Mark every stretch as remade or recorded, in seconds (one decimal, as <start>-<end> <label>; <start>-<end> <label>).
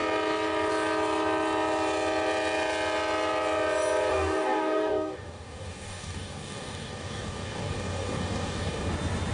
0.0-4.1 recorded; 4.1-8.9 remade; 8.9-9.3 recorded